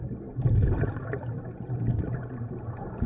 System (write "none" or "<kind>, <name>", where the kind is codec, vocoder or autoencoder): none